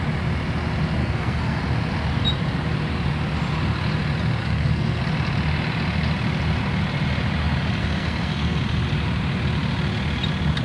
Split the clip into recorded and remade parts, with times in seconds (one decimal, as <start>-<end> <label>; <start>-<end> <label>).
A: 0.0-1.0 recorded; 1.0-1.6 remade; 1.6-4.4 recorded; 4.4-5.0 remade; 5.0-7.8 recorded; 7.8-8.6 remade; 8.6-10.6 recorded